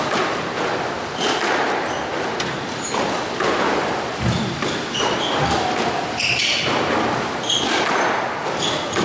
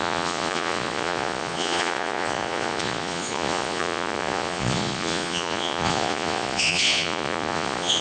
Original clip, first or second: first